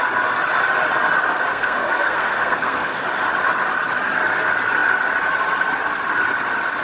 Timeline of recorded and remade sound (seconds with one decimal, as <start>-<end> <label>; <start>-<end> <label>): 0.0-1.5 recorded; 1.5-3.0 remade; 3.0-6.8 recorded